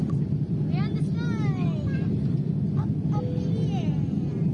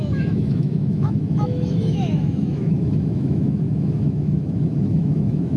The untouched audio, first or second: first